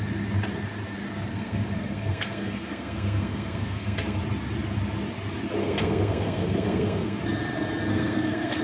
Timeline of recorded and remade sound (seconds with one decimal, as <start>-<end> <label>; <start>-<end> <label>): 0.0-1.3 recorded; 1.3-4.2 remade; 4.2-5.6 recorded; 5.6-7.2 remade; 7.2-7.9 recorded; 7.9-8.6 remade